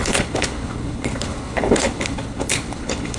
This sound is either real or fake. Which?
fake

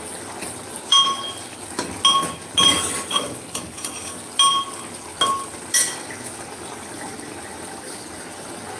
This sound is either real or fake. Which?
real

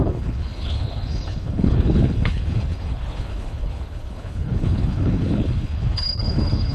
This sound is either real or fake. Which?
fake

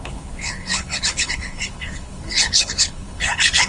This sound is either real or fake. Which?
fake